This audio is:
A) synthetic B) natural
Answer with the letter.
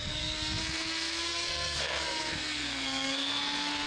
A